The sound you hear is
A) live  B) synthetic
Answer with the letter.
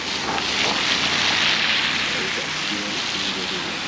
A